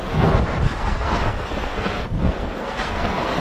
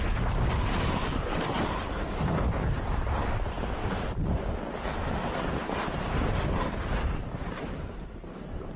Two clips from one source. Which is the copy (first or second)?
first